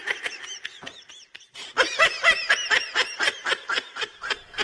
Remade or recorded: remade